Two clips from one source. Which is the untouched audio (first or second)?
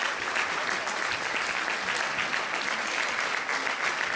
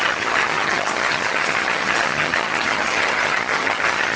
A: first